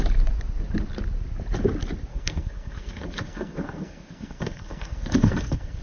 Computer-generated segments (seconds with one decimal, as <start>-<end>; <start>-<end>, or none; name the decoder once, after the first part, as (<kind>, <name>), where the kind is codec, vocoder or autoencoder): 2.1-5.8 (codec, SNAC)